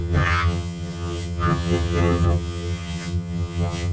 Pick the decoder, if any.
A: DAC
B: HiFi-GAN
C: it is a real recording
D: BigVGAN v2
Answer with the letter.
B